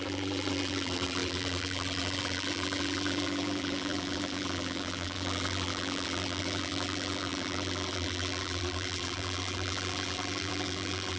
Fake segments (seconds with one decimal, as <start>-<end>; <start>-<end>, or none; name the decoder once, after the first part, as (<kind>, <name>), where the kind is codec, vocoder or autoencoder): 0.0-11.2 (vocoder, BigVGAN v2)